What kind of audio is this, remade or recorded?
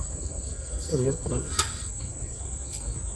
remade